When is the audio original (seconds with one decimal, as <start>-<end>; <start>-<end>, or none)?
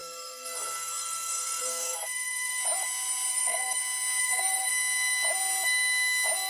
2.6-3.3; 3.8-4.2; 4.7-6.5